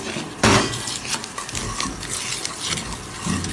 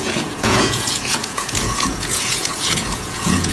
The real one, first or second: first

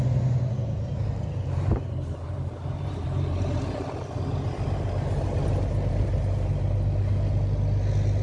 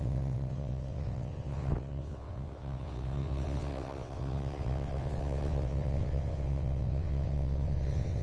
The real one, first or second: first